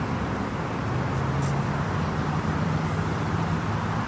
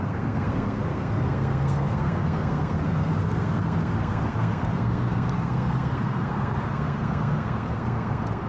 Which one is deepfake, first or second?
second